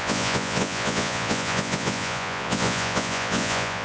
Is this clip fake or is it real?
fake